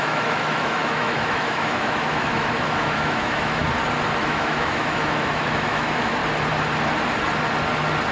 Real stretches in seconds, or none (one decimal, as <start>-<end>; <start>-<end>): 3.6-4.2; 6.2-8.1